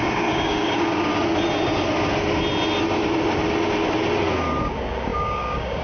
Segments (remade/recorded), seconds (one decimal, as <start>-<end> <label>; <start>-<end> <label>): 0.0-1.1 remade; 1.1-4.6 recorded; 4.6-5.8 remade